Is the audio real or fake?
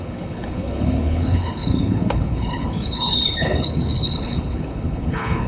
fake